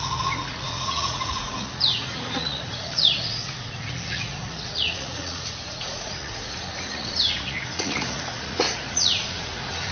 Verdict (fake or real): fake